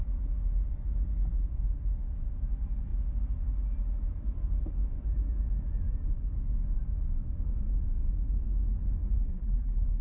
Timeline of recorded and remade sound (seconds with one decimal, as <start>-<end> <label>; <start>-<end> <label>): 0.0-9.1 recorded; 9.1-10.0 remade